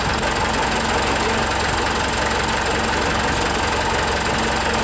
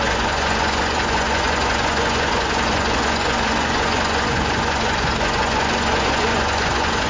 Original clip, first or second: first